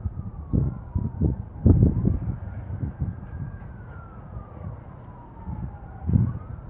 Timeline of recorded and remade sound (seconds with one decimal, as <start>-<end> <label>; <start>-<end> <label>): 0.0-1.5 remade; 1.5-2.2 recorded; 2.2-6.7 remade